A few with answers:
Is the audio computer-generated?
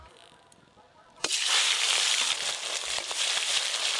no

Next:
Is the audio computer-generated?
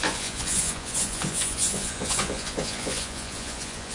yes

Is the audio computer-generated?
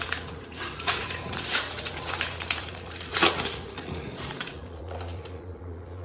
yes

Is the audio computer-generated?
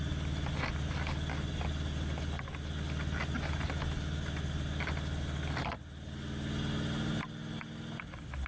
no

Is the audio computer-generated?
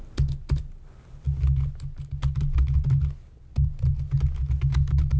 no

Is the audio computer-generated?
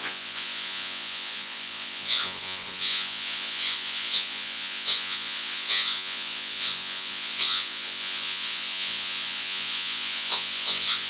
yes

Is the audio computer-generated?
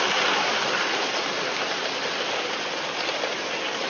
no